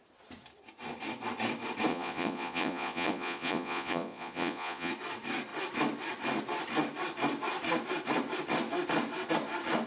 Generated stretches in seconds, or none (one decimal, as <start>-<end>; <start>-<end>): 1.9-4.9